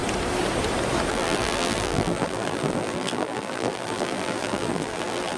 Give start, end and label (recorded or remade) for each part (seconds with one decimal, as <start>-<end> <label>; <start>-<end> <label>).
0.0-1.1 recorded; 1.1-5.4 remade